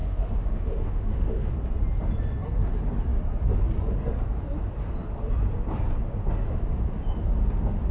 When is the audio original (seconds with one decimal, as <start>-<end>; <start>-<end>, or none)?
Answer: 1.5-7.9